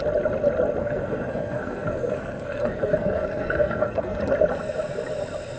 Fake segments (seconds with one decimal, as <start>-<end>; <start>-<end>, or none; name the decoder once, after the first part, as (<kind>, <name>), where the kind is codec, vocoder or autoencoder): 0.8-4.2 (codec, SNAC)